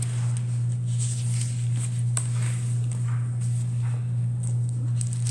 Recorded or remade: recorded